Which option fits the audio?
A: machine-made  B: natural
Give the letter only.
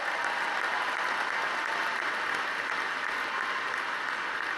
B